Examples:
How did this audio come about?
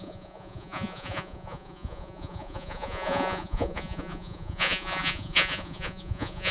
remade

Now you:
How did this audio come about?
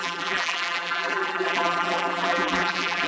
remade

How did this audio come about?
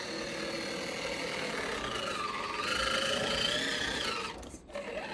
recorded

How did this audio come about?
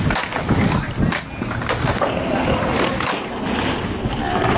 recorded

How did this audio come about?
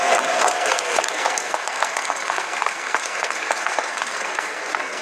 remade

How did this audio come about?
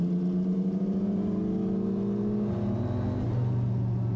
recorded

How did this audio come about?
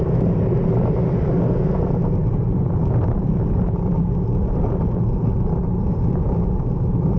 recorded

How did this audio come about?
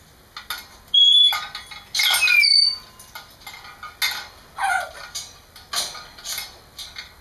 recorded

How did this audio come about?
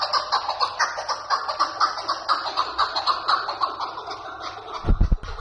recorded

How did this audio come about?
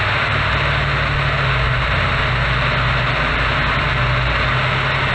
recorded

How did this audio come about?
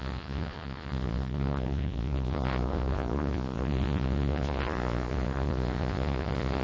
remade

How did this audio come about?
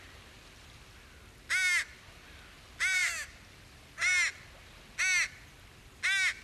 recorded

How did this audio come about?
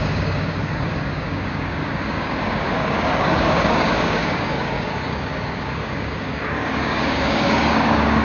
remade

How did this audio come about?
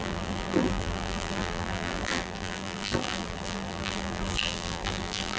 remade